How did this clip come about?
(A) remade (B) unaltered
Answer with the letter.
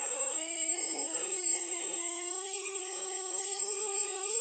A